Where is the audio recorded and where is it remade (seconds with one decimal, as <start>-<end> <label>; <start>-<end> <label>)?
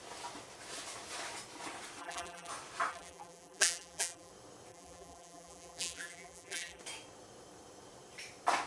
0.0-2.0 recorded; 2.0-2.5 remade; 2.5-2.9 recorded; 2.9-4.3 remade; 4.3-4.7 recorded; 4.7-6.8 remade; 6.8-8.7 recorded